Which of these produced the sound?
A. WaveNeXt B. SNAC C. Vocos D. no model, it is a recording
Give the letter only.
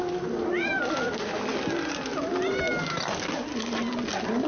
D